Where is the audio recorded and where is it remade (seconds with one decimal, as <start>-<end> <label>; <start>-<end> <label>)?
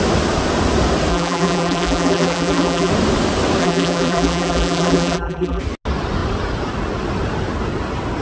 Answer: 0.0-1.1 recorded; 1.1-2.9 remade; 2.9-3.6 recorded; 3.6-5.6 remade; 5.6-8.2 recorded